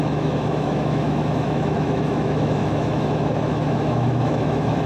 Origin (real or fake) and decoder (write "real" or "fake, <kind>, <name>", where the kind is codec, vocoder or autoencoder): fake, autoencoder, DAC-VAE